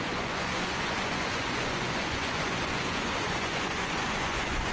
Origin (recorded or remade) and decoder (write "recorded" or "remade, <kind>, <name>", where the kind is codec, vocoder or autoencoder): remade, vocoder, Vocos